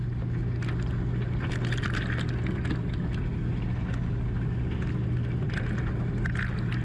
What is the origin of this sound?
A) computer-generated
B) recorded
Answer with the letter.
B